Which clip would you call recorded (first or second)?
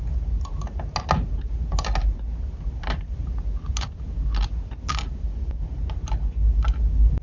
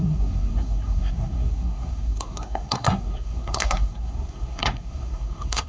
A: first